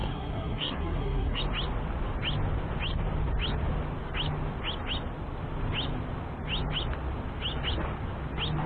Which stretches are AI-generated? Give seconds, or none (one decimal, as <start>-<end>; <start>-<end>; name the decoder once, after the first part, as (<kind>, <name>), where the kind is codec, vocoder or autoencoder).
0.0-1.4 (codec, SNAC)